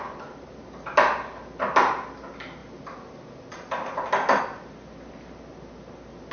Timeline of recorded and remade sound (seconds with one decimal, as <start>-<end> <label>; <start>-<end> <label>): 0.0-6.3 recorded